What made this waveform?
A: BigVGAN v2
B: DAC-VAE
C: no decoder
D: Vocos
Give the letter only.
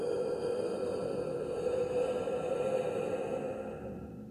C